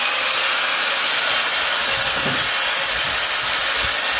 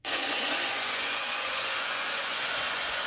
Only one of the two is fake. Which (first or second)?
second